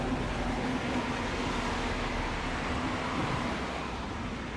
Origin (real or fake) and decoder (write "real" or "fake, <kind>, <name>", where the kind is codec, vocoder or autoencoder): real